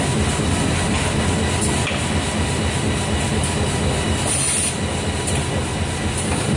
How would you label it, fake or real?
real